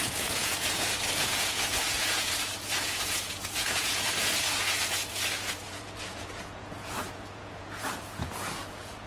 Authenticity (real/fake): fake